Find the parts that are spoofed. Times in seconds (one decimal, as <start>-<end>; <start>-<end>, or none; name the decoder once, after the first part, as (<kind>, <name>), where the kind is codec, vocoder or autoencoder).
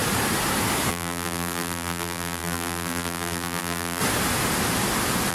0.9-4.0 (vocoder, BigVGAN v2)